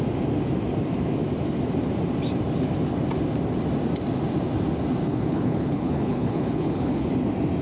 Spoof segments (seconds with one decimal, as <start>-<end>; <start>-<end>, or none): 5.1-7.1